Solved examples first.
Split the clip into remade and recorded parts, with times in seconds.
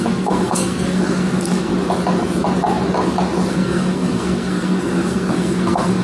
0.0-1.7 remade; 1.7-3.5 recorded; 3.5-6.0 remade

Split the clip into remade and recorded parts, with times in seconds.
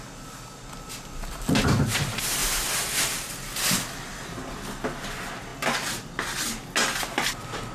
0.0-7.7 recorded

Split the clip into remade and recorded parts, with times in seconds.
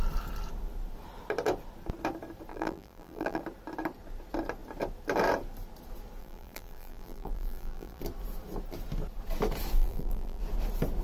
0.0-2.5 recorded; 2.5-3.4 remade; 3.4-6.2 recorded; 6.2-8.0 remade; 8.0-9.8 recorded; 9.8-10.4 remade; 10.4-11.0 recorded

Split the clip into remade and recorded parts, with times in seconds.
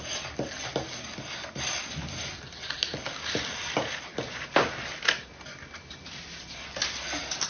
0.0-7.5 recorded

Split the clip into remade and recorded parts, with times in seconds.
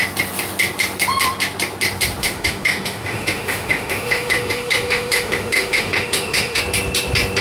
0.0-2.2 recorded; 2.2-6.6 remade; 6.6-7.4 recorded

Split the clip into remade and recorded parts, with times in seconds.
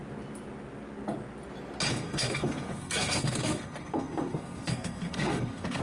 0.0-1.9 recorded; 1.9-5.8 remade